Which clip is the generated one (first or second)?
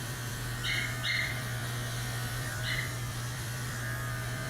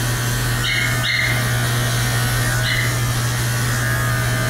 first